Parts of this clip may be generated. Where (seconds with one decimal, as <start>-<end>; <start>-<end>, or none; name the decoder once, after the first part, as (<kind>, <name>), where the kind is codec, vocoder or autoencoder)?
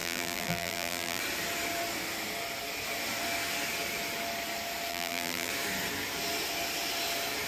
0.0-1.2 (vocoder, BigVGAN v2); 4.9-5.5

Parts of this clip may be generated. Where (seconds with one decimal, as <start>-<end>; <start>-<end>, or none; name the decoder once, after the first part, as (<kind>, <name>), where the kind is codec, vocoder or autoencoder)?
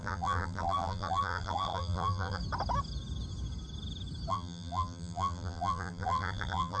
0.0-2.4 (vocoder, BigVGAN v2); 4.3-6.8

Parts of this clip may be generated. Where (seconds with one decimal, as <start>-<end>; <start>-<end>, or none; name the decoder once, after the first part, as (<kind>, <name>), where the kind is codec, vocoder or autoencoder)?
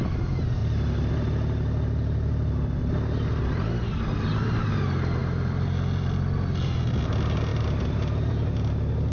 5.2-7.0 (vocoder, BigVGAN v2); 7.5-8.3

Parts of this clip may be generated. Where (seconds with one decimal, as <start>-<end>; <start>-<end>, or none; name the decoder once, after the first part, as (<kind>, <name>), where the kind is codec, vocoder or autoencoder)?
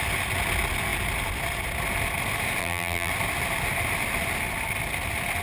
2.6-3.1 (vocoder, BigVGAN v2)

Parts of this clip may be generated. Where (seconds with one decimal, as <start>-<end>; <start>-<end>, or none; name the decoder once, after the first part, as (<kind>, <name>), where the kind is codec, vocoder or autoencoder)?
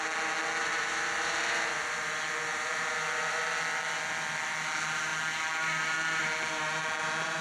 0.6-3.4 (vocoder, BigVGAN v2)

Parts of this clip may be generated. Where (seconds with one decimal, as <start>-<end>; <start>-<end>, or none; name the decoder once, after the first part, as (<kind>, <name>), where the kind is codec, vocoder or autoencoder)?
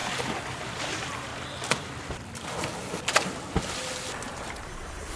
0.5-1.3 (vocoder, BigVGAN v2); 4.3-5.2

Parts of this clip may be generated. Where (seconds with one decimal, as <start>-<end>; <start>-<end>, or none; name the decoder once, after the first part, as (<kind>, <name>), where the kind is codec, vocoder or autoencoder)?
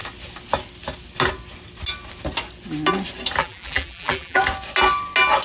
3.4-4.4 (vocoder, BigVGAN v2)